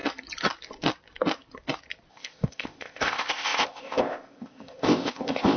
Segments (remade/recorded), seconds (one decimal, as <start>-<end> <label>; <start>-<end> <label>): 0.0-2.1 recorded; 2.1-5.6 remade